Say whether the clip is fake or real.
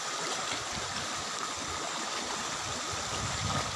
real